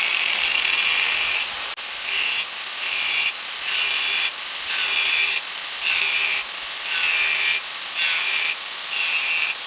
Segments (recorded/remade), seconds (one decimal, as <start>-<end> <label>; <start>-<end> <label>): 0.0-9.7 recorded